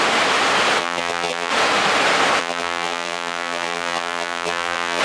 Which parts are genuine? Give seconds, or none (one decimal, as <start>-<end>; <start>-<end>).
0.0-0.8; 1.5-2.4